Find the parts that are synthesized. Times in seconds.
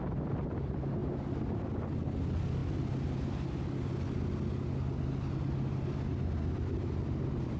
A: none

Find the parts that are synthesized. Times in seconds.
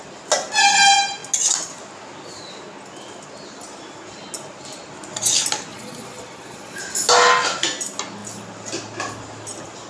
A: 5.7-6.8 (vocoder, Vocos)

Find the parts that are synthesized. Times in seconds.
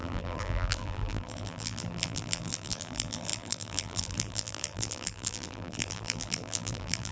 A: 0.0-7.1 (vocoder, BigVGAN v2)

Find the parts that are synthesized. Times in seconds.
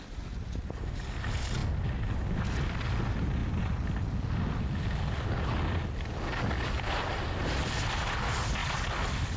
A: 8.6-9.4 (vocoder, BigVGAN v2)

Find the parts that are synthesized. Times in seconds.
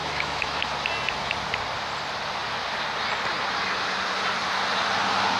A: 0.0-0.6 (autoencoder, DAC-VAE)